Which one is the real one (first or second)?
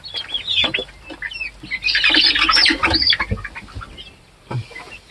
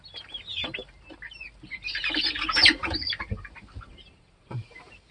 first